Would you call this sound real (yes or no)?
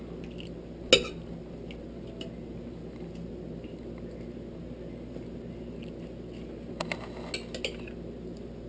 yes